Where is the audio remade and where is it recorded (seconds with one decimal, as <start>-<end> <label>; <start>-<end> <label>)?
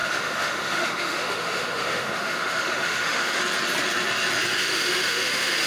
0.0-3.4 remade; 3.4-4.6 recorded; 4.6-5.7 remade